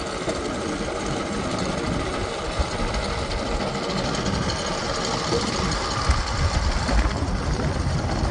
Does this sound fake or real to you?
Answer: real